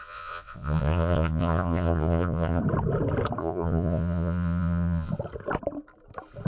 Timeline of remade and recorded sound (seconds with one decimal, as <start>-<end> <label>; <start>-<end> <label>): 0.0-2.6 remade; 2.6-3.4 recorded; 3.4-5.1 remade; 5.1-6.5 recorded